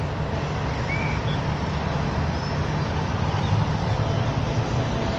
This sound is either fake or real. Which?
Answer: real